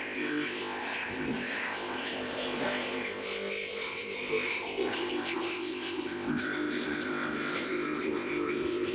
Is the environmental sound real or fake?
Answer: fake